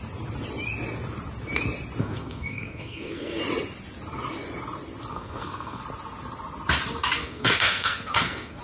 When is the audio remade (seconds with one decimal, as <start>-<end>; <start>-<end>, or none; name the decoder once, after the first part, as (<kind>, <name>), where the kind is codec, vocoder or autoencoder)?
2.0-3.4 (codec, SNAC); 5.1-5.8; 7.2-8.6